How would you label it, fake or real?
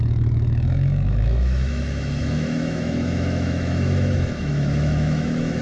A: fake